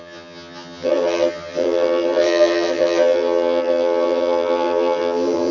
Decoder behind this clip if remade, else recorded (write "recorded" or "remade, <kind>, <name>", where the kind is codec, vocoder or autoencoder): remade, vocoder, HiFi-GAN